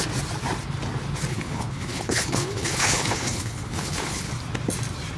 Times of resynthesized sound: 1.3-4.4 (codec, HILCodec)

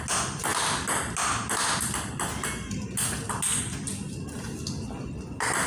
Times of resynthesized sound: none

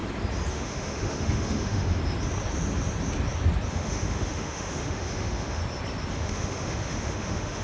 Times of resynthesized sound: 0.5-2.0 (autoencoder, DAC-VAE); 3.7-5.6; 6.1-7.6

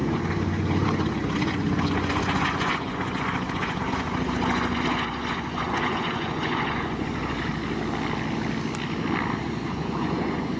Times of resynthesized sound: 0.0-7.5 (vocoder, Vocos); 9.4-10.6